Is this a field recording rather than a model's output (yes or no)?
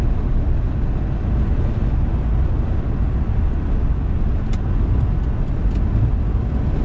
yes